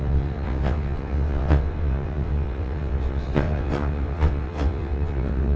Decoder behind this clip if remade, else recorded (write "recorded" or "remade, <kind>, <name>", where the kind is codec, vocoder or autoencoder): remade, vocoder, WaveNeXt